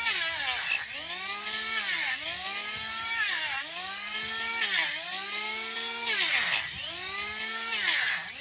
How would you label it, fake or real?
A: real